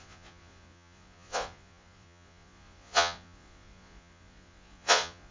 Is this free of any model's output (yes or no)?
no